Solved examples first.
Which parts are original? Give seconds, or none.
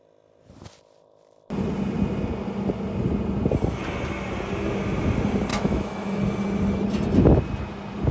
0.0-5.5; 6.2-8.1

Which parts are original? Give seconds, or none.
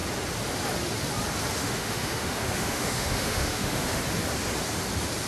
0.0-1.6; 4.0-5.3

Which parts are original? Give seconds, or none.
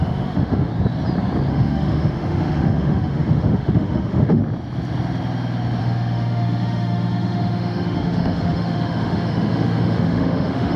0.7-1.5; 4.4-5.8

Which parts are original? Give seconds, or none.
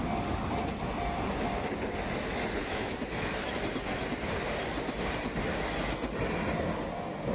0.0-2.6; 3.6-7.3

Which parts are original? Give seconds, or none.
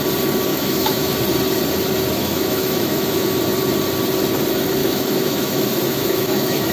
0.0-0.5; 1.1-2.2; 3.4-4.8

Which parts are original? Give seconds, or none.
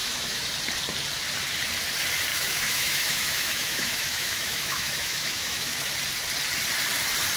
0.5-2.3; 5.9-7.4